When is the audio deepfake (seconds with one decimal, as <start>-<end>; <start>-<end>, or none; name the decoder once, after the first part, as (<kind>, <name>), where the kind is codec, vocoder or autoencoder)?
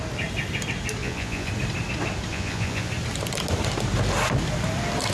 1.0-1.5 (vocoder, Vocos); 2.3-2.9